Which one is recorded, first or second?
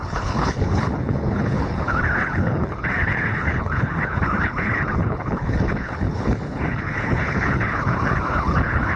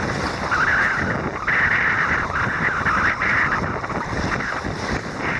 second